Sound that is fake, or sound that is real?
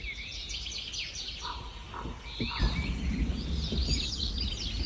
real